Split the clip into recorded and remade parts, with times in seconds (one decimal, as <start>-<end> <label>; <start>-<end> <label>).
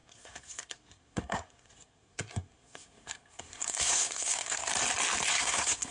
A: 0.0-4.7 remade; 4.7-5.3 recorded; 5.3-5.9 remade